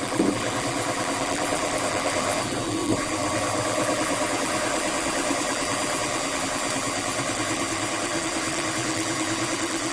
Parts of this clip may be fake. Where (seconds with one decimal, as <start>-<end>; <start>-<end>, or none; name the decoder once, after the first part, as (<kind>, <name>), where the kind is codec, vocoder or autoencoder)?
0.0-9.9 (vocoder, BigVGAN v2)